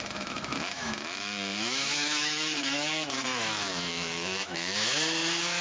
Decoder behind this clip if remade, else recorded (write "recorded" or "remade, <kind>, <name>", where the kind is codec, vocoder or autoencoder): remade, autoencoder, DAC-VAE